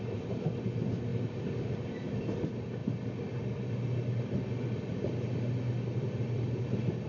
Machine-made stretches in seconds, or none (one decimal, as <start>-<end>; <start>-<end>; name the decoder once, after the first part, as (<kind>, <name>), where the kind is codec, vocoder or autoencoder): none